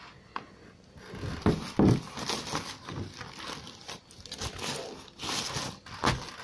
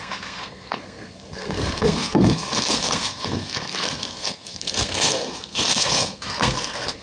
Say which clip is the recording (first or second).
first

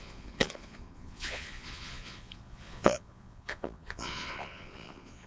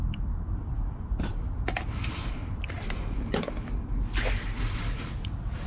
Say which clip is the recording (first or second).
second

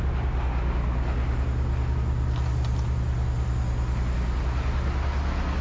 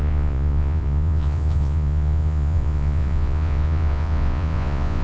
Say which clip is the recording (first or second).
first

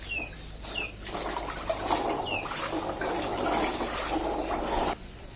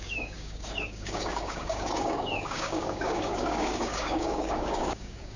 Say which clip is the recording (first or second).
first